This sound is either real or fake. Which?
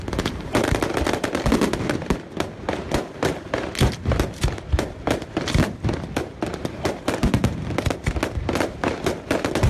fake